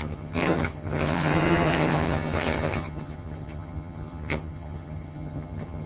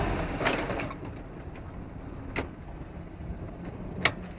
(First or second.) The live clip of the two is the second